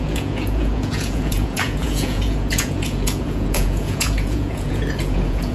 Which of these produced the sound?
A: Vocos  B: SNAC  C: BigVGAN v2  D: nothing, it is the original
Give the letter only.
A